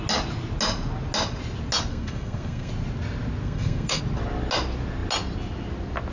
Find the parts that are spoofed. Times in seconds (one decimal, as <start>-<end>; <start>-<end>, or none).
1.9-2.7; 3.4-4.0